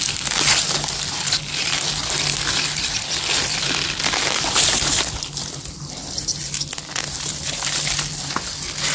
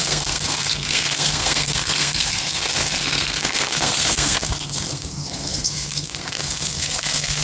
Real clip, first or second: first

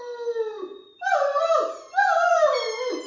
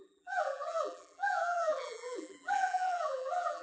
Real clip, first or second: first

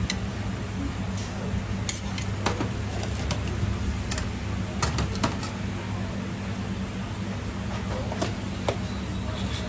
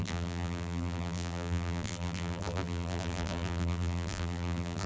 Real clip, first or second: first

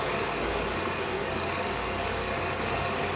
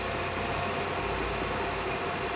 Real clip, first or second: second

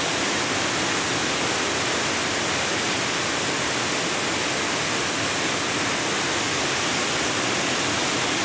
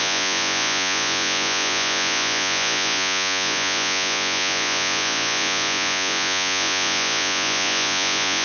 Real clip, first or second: first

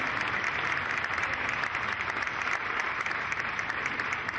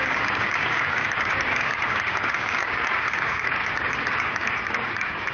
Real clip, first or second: first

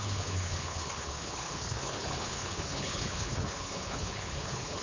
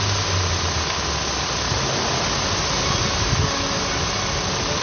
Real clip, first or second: second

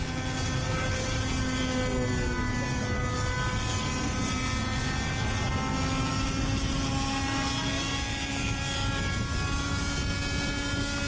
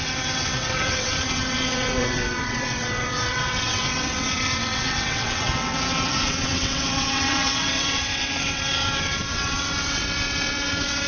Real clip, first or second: first